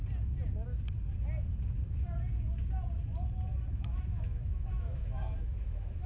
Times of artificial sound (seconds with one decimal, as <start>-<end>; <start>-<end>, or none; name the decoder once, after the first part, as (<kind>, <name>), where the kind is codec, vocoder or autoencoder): 3.7-6.1 (autoencoder, DAC-VAE)